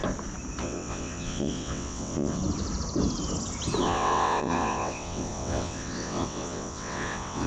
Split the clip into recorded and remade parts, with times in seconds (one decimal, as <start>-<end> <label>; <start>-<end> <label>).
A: 0.0-0.6 recorded; 0.6-2.4 remade; 2.4-3.8 recorded; 3.8-7.5 remade